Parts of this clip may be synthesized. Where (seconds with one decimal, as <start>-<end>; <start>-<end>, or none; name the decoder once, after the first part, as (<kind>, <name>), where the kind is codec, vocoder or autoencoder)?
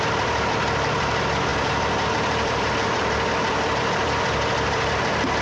0.0-5.4 (vocoder, BigVGAN v2)